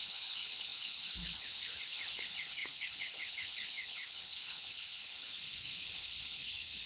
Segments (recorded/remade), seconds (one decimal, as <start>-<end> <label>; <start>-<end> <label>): 0.0-6.9 remade